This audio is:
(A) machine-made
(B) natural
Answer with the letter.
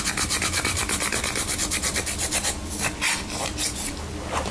A